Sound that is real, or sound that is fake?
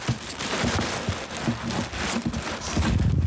real